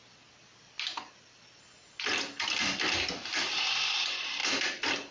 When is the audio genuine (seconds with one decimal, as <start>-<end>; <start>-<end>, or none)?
0.0-5.1